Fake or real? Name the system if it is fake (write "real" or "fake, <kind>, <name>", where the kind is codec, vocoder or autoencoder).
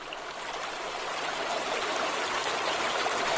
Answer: real